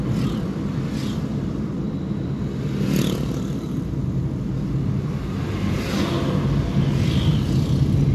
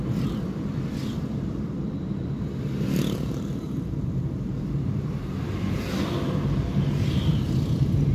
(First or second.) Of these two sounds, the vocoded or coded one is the second